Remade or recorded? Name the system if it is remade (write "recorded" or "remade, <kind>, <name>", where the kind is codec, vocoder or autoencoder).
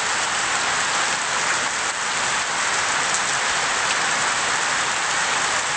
recorded